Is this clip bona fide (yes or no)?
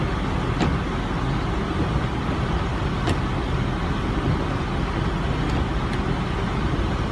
yes